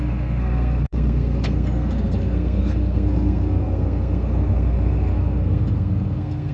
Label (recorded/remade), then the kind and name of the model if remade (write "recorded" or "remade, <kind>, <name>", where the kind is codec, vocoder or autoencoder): remade, codec, SNAC